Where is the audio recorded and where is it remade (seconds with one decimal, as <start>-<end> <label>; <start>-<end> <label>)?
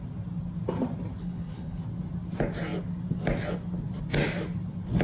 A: 0.0-1.2 recorded; 1.2-1.8 remade; 1.8-5.0 recorded